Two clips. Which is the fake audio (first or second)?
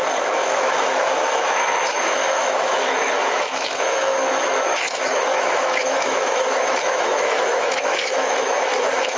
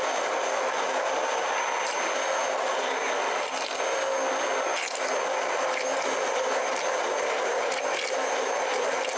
first